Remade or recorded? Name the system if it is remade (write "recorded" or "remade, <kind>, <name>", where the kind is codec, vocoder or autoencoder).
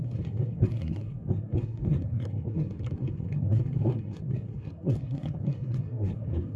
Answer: remade, codec, SNAC